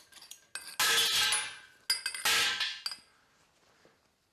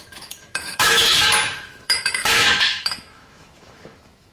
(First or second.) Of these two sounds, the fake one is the second